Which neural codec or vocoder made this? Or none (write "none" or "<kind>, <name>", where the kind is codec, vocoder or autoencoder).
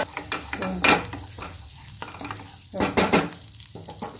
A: none